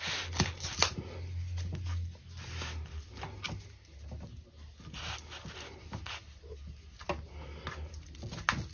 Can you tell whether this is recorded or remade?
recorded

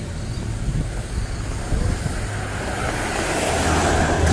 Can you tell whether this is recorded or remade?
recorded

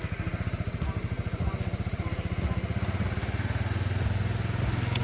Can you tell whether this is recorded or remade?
recorded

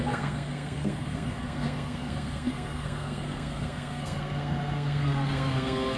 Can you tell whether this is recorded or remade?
remade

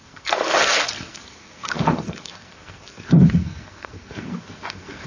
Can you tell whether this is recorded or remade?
remade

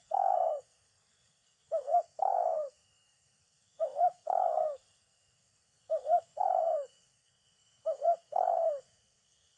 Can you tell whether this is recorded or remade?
remade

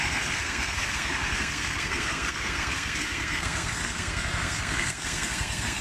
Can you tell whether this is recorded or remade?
remade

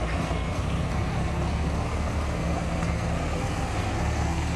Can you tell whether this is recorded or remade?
remade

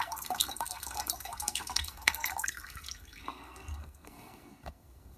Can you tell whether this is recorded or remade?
remade